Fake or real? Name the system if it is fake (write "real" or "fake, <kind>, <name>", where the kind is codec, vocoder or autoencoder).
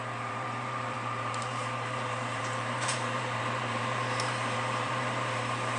fake, vocoder, BigVGAN v2